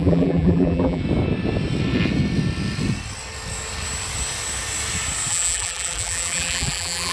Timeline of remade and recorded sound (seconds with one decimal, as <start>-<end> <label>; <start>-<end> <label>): 0.0-1.0 remade; 1.0-5.3 recorded; 5.3-7.1 remade